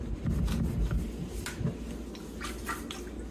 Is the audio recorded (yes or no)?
yes